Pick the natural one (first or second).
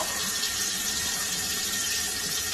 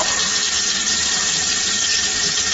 second